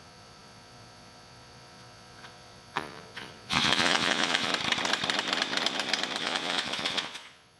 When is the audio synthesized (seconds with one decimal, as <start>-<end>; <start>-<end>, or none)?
0.0-4.5; 6.2-7.6